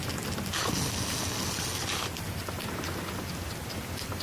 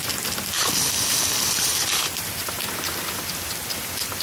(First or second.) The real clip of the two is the first